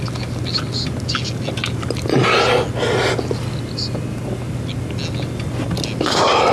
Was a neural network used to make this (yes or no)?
no